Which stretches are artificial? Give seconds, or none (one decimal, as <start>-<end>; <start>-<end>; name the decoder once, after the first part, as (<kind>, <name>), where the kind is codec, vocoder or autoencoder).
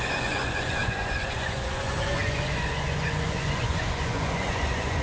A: 0.0-5.0 (vocoder, Vocos)